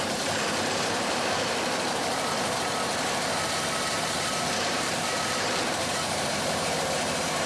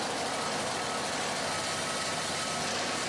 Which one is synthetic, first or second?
first